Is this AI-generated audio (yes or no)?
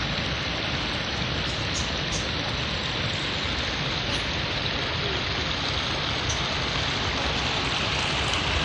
no